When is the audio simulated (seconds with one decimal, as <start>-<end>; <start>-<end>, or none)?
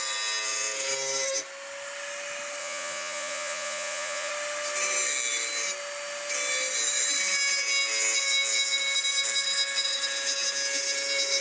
2.6-4.3